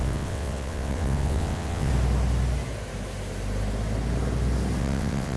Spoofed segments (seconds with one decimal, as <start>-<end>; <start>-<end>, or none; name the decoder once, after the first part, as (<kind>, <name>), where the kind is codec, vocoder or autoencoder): 0.0-1.9 (vocoder, WaveNeXt); 4.8-5.4